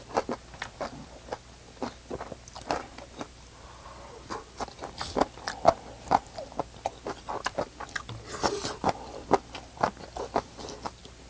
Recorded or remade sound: recorded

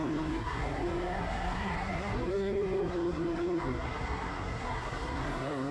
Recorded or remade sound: remade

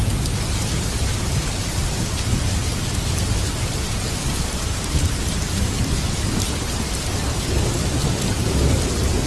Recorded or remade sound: recorded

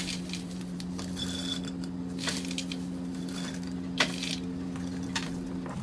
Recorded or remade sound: recorded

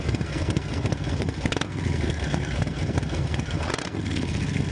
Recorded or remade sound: remade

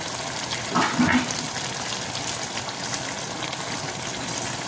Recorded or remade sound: recorded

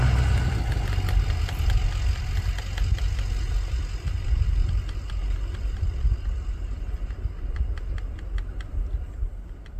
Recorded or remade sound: recorded